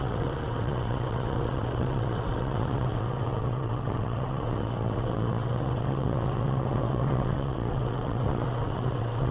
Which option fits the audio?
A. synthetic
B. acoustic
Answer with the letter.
A